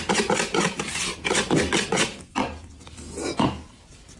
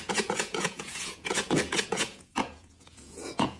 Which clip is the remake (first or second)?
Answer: second